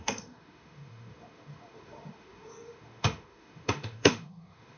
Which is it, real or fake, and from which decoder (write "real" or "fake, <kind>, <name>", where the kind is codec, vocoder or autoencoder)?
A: fake, autoencoder, DAC-VAE